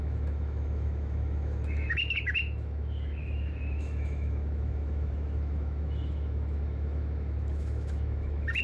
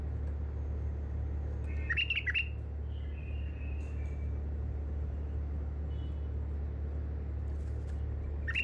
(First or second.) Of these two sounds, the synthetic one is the first